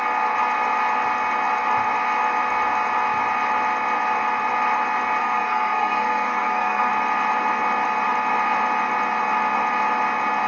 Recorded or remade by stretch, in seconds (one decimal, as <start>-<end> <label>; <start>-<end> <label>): 0.0-5.2 recorded; 5.2-6.9 remade; 6.9-10.5 recorded

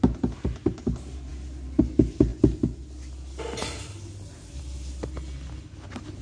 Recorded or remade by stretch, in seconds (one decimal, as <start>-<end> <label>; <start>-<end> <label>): 0.0-6.2 recorded

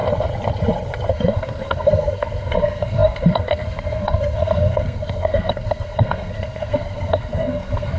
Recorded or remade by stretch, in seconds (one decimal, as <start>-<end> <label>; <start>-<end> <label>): 0.0-1.1 recorded; 1.1-8.0 remade